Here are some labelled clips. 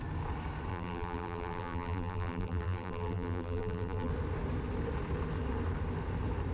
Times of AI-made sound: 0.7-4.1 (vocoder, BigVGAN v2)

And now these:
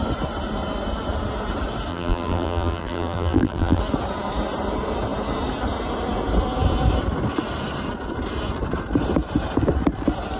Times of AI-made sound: 1.9-3.8 (vocoder, BigVGAN v2)

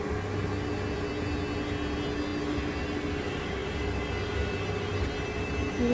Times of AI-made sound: none

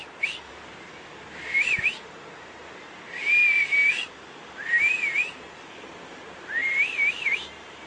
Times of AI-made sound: none

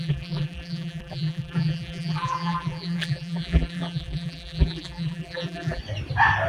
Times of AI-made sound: 0.0-5.8 (vocoder, BigVGAN v2)